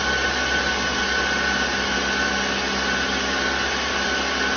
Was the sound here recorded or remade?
recorded